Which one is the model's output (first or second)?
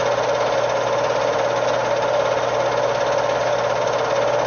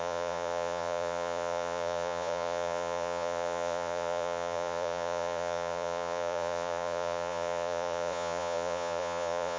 second